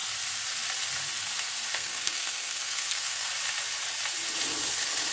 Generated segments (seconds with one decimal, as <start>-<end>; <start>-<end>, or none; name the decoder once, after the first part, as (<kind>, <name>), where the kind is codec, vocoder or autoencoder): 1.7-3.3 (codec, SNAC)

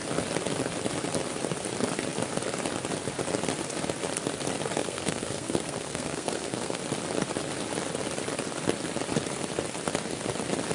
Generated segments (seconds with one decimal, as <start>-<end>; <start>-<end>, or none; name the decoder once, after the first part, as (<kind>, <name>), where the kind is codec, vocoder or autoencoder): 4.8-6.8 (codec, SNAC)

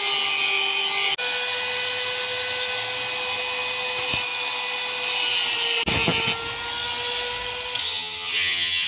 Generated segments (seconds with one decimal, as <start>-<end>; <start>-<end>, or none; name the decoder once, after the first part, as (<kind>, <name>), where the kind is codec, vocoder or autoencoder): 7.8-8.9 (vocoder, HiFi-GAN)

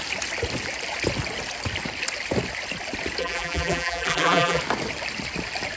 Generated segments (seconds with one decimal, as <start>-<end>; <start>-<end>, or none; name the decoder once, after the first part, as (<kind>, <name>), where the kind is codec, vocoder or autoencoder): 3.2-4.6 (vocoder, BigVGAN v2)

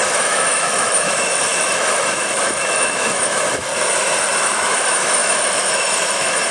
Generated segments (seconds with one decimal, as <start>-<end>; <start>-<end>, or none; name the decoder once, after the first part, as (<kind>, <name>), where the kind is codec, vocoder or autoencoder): 0.0-3.7 (autoencoder, DAC-VAE); 4.4-6.5